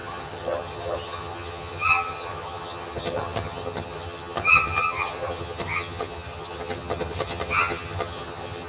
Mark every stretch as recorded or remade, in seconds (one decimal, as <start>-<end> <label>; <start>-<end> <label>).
0.0-8.7 remade